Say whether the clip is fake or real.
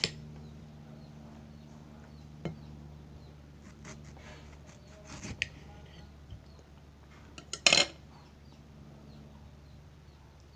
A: real